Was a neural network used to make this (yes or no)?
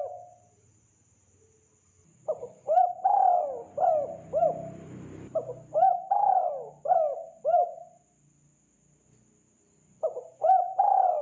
no